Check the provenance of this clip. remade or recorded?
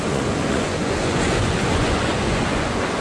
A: remade